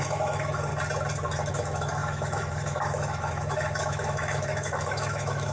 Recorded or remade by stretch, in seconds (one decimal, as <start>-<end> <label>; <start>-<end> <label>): 0.0-0.7 remade; 0.7-1.5 recorded; 1.5-5.5 remade